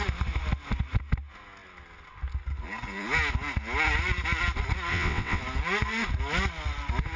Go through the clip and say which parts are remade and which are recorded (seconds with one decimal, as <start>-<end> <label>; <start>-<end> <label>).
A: 0.0-4.9 recorded; 4.9-5.4 remade; 5.4-7.2 recorded